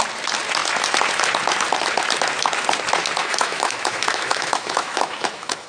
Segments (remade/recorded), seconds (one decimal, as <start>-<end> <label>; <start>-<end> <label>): 0.0-3.2 recorded; 3.2-5.7 remade